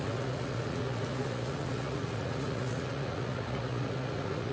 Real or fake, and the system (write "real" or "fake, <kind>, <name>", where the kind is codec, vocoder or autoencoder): fake, vocoder, Vocos